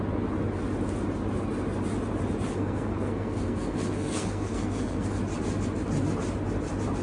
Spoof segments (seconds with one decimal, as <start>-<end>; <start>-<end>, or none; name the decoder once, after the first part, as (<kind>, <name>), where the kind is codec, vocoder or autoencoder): 2.5-5.2 (codec, SNAC)